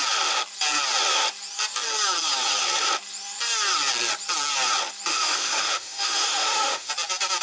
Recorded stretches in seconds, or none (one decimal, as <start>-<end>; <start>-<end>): 0.0-5.1; 6.9-7.4